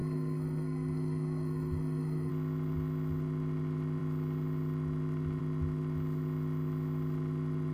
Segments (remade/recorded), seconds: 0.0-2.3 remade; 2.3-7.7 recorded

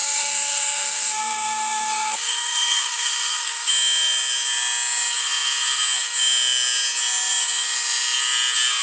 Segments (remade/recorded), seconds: 0.0-3.7 remade; 3.7-8.8 recorded